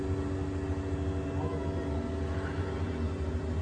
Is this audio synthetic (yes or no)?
no